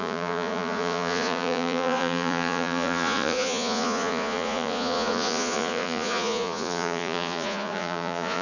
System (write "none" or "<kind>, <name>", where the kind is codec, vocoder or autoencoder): vocoder, Vocos